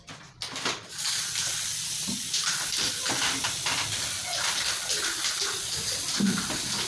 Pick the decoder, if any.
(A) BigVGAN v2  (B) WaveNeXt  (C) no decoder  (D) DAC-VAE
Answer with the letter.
C